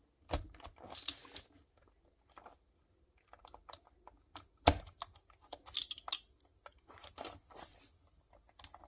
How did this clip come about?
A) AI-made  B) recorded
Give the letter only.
B